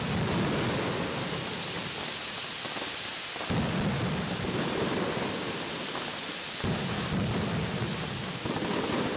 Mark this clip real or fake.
real